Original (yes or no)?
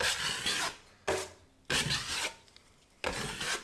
yes